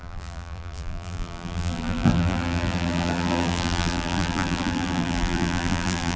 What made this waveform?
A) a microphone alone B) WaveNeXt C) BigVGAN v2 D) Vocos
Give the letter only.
C